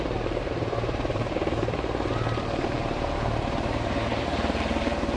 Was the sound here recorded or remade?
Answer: remade